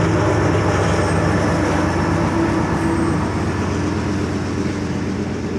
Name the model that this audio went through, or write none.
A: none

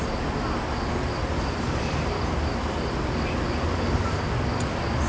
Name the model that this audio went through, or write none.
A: none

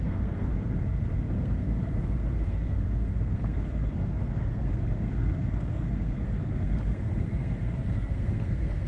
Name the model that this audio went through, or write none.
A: codec, SNAC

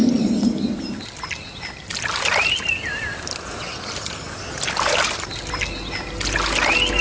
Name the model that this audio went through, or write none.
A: none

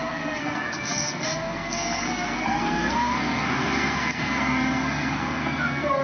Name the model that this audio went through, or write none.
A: codec, SNAC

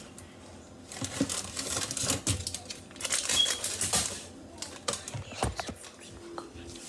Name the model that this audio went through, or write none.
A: none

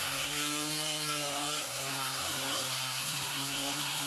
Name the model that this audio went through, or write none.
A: codec, SNAC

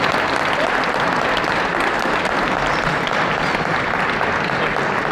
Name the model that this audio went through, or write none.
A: none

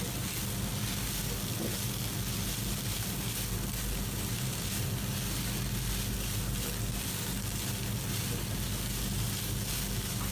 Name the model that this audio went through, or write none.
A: none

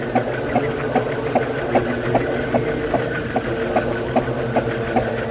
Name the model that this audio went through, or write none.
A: none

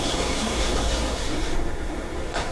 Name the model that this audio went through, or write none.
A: codec, SNAC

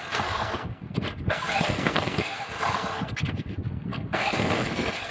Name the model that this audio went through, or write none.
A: codec, SNAC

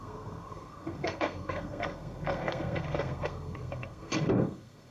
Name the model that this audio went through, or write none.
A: codec, SNAC